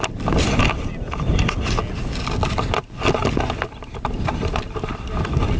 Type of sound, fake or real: real